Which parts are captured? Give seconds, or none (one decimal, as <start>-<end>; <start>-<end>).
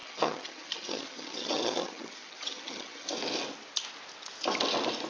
3.1-5.1